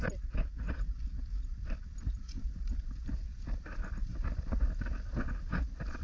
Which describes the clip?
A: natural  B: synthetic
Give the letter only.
A